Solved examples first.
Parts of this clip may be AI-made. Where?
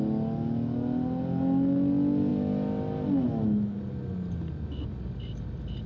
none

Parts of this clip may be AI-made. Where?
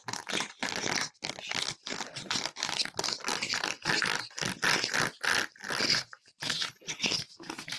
6.5-7.1 (codec, HILCodec)